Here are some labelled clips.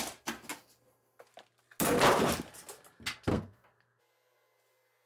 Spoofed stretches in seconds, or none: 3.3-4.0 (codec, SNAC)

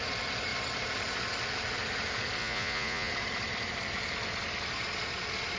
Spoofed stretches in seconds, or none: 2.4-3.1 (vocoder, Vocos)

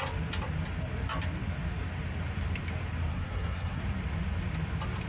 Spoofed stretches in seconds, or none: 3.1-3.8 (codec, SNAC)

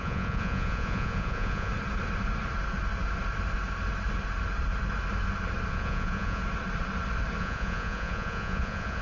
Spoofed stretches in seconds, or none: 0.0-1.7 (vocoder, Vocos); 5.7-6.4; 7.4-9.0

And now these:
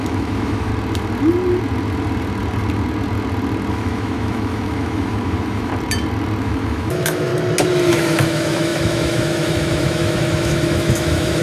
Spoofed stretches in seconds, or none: 0.0-0.7 (autoencoder, DAC-VAE); 3.7-5.7; 6.4-7.3; 7.9-11.4